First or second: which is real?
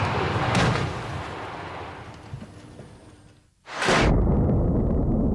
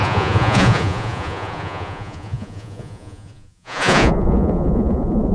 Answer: first